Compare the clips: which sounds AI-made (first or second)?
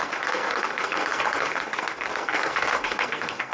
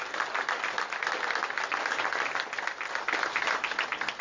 first